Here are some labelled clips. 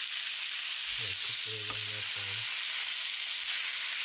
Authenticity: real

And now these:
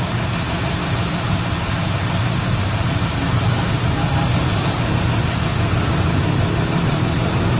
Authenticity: real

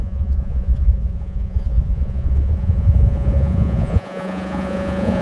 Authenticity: fake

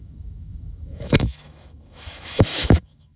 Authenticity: fake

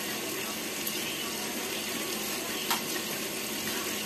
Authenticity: real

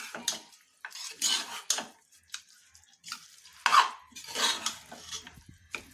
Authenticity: real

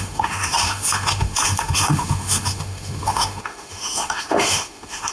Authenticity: fake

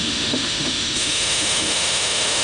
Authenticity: fake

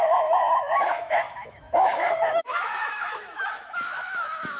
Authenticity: fake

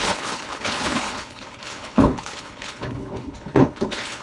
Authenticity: fake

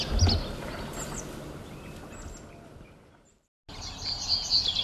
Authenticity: real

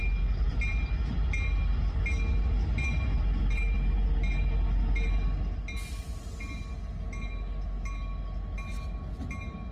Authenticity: real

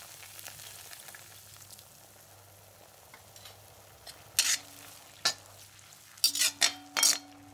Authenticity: real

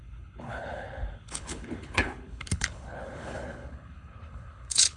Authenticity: fake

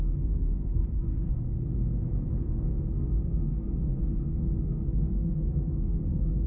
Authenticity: fake